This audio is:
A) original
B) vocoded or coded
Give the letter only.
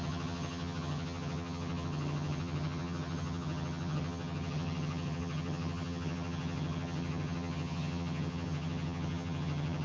B